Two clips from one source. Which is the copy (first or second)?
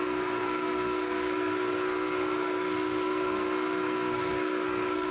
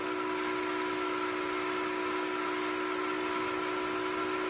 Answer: first